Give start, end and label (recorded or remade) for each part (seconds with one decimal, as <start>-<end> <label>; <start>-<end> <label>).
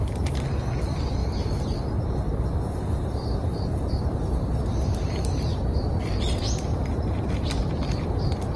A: 0.0-1.2 recorded; 1.2-6.2 remade; 6.2-6.7 recorded; 6.7-8.6 remade